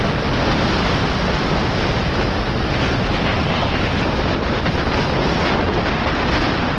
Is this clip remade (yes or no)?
no